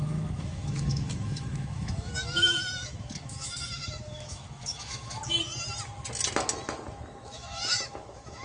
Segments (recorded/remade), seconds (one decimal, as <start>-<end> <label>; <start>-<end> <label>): 0.0-5.2 remade; 5.2-7.1 recorded; 7.1-8.4 remade